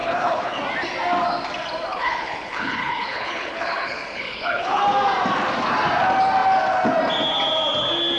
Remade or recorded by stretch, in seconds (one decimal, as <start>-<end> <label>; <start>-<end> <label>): 0.0-0.6 remade; 0.6-1.9 recorded; 1.9-4.8 remade; 4.8-8.2 recorded